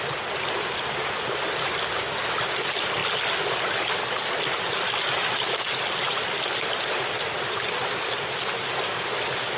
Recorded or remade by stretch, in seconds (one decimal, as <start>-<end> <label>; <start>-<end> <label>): 0.0-9.6 recorded